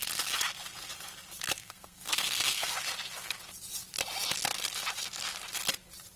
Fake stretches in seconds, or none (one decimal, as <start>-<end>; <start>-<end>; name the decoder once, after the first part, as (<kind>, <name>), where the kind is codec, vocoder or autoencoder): 1.6-2.7 (codec, SNAC)